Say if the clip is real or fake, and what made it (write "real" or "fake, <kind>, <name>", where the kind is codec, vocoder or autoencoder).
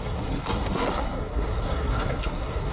fake, codec, SNAC